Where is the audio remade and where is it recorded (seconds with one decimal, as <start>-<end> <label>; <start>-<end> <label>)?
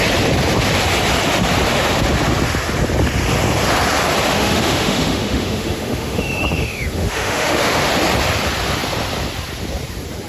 0.0-4.3 recorded; 4.3-7.9 remade; 7.9-10.3 recorded